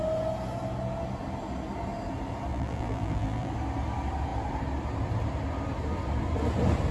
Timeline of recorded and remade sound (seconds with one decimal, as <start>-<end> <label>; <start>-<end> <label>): 0.0-2.5 recorded; 2.5-3.5 remade; 3.5-6.9 recorded